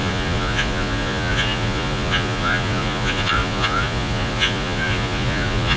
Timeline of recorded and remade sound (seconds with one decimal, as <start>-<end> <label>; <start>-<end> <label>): 0.0-5.8 remade